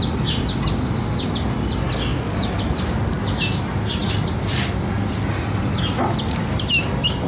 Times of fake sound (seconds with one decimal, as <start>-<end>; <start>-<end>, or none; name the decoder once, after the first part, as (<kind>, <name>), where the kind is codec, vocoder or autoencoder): none